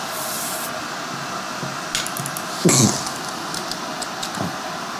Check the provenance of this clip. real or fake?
real